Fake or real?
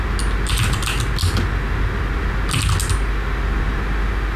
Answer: real